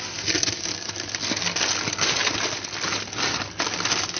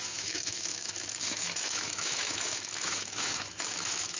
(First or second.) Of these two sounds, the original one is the first